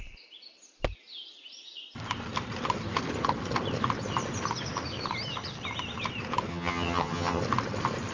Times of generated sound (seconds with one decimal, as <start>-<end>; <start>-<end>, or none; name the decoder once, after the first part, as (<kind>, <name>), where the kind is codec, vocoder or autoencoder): 6.5-7.4 (vocoder, HiFi-GAN)